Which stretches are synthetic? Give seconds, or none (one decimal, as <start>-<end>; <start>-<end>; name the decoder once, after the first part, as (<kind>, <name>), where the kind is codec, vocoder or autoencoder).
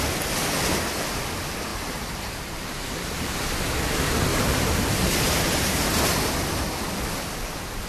1.7-3.3 (vocoder, BigVGAN v2); 4.3-6.0